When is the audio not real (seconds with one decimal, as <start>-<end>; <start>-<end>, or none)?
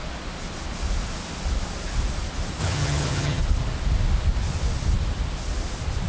2.6-3.4